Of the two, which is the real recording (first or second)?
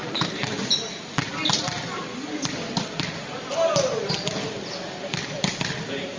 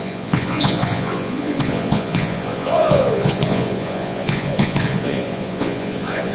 first